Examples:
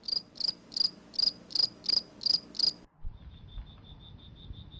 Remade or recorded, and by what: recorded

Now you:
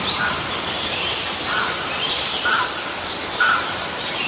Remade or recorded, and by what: recorded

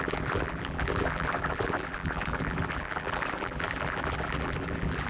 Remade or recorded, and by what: remade, vocoder, BigVGAN v2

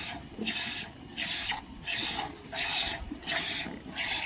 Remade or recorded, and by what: recorded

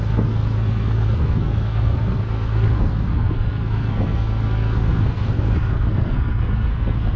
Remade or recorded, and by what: remade, codec, SNAC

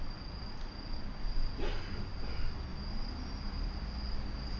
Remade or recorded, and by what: recorded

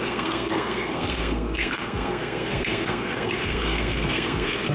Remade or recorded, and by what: remade, codec, SNAC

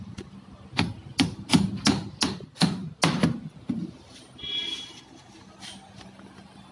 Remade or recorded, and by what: recorded